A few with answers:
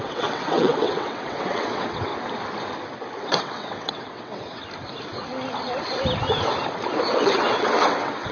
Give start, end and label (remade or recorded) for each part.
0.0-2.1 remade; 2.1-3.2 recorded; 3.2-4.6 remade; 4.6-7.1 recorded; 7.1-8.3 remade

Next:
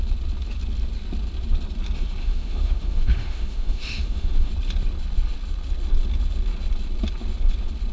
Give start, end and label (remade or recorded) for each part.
0.0-2.2 recorded; 2.2-4.5 remade; 4.5-7.9 recorded